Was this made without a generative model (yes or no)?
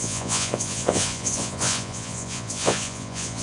no